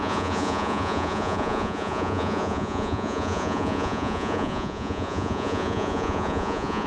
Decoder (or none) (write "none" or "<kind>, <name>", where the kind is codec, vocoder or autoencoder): vocoder, Vocos